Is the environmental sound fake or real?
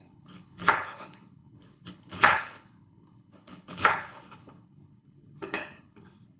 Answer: fake